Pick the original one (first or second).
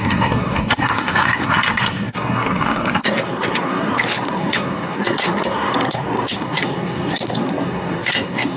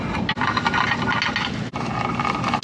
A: second